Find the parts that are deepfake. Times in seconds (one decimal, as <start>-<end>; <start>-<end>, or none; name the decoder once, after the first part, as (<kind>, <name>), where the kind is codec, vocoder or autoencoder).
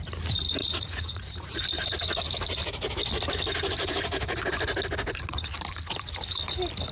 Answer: 0.6-1.6 (vocoder, Vocos)